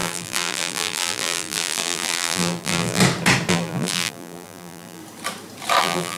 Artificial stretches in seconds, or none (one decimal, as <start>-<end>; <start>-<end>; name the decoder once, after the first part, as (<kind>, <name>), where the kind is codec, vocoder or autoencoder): 0.0-3.0 (vocoder, BigVGAN v2); 3.5-5.0; 5.8-6.2